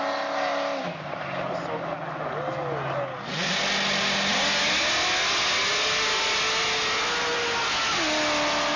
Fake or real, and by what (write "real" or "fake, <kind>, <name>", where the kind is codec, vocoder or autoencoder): real